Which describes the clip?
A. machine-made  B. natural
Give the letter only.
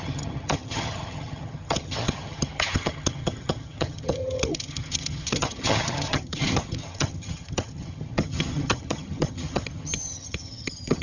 A